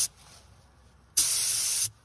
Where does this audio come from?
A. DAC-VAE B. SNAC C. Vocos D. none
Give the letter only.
D